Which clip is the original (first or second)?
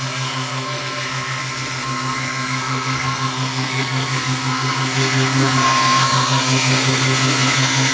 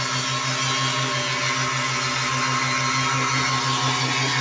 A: second